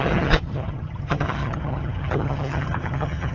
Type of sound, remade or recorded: remade